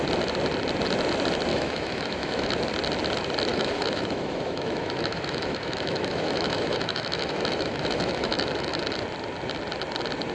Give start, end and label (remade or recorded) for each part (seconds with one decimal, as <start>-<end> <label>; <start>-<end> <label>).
0.0-1.5 recorded; 1.5-2.6 remade; 2.6-3.5 recorded; 3.5-8.8 remade; 8.8-10.3 recorded